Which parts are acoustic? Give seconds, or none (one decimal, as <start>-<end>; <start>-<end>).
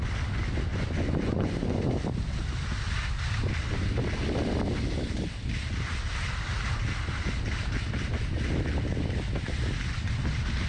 0.0-0.7; 1.9-10.7